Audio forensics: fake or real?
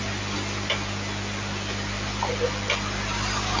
real